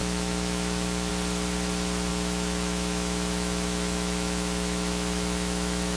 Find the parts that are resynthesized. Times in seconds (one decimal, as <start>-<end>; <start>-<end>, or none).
0.0-1.1; 2.1-6.0